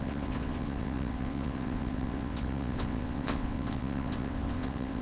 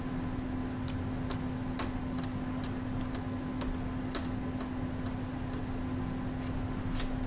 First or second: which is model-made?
first